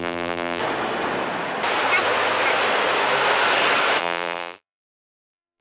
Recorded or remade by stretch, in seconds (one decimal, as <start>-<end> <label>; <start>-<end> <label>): 0.0-0.6 remade; 0.6-4.0 recorded; 4.0-5.6 remade

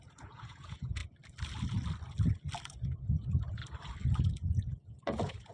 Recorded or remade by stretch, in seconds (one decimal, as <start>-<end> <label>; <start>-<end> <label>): 0.0-1.0 remade; 1.0-2.7 recorded; 2.7-3.6 remade; 3.6-4.2 recorded; 4.2-5.5 remade